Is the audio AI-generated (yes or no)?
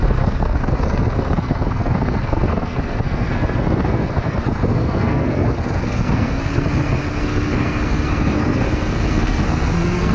yes